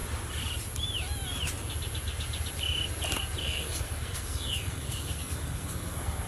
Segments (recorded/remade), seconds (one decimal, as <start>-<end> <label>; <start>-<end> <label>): 0.0-3.4 recorded; 3.4-6.3 remade